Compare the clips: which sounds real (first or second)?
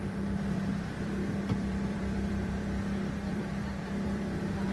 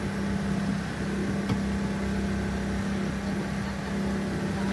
second